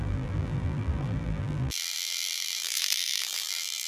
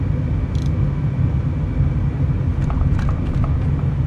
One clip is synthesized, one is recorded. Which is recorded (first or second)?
second